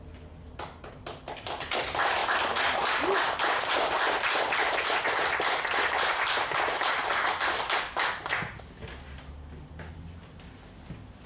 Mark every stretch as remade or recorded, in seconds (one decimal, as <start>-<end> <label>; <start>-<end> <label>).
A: 0.0-11.3 recorded